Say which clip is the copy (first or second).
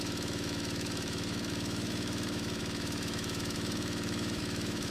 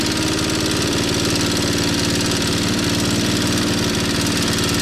first